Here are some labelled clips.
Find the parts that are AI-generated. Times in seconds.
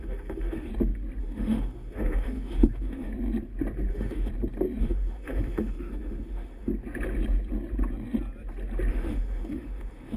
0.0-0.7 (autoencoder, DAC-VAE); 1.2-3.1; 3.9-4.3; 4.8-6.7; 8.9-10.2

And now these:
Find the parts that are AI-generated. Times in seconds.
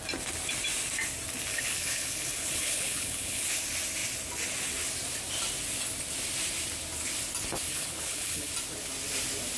1.5-3.4 (codec, HILCodec); 7.7-8.5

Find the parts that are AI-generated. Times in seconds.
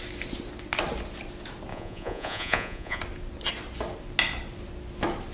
1.7-3.0 (vocoder, Vocos)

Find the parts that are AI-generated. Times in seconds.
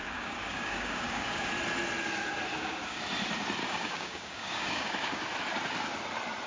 0.0-1.5 (codec, DAC); 2.5-3.0; 3.6-5.2